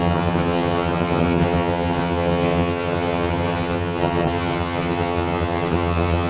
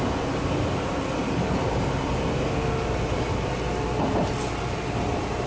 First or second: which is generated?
first